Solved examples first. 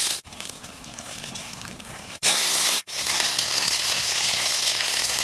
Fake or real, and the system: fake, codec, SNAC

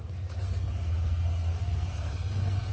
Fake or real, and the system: fake, codec, SNAC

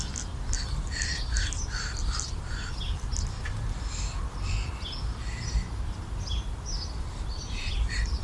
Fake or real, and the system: real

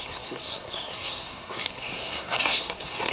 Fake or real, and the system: fake, codec, SNAC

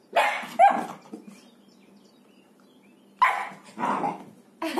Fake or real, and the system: real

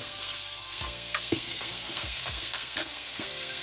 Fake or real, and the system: fake, codec, SNAC